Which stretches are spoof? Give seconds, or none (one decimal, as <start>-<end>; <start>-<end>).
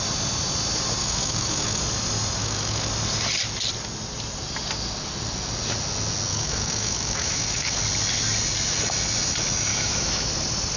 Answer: 1.0-1.8; 2.4-2.9; 6.3-7.8; 9.7-10.3